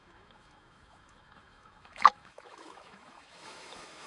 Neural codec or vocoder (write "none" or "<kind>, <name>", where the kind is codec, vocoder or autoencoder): autoencoder, DAC-VAE